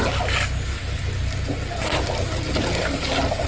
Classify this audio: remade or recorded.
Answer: recorded